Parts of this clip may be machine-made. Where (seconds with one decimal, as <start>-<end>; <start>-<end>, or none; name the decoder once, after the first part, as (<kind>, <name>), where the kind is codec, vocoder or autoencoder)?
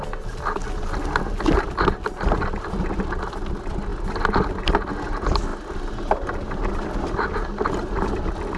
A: none